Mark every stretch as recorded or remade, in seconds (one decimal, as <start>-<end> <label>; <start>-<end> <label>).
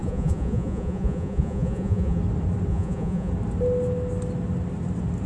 0.0-2.2 remade; 2.2-2.7 recorded; 2.7-3.3 remade; 3.3-5.3 recorded